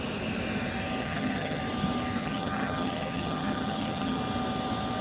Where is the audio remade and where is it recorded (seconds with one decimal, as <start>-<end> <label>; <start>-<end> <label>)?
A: 0.0-1.0 recorded; 1.0-1.6 remade; 1.6-2.2 recorded; 2.2-4.2 remade; 4.2-5.0 recorded